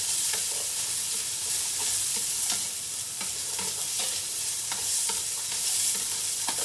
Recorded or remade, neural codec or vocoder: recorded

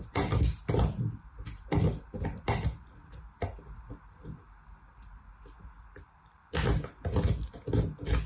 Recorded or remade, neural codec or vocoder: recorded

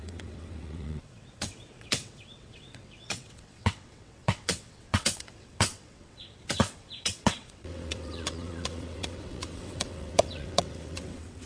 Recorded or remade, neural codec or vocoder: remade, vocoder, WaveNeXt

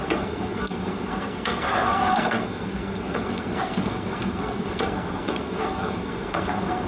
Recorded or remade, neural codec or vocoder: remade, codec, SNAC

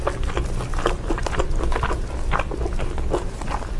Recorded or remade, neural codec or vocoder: recorded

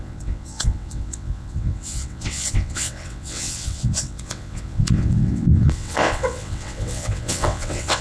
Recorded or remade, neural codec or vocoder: remade, vocoder, WaveNeXt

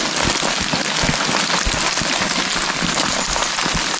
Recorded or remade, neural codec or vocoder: recorded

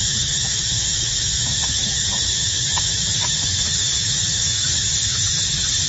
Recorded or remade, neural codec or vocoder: remade, autoencoder, DAC-VAE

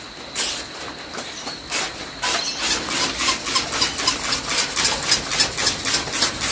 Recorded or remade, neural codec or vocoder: recorded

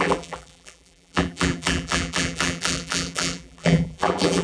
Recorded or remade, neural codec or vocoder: remade, vocoder, BigVGAN v2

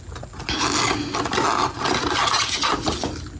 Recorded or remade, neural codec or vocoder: recorded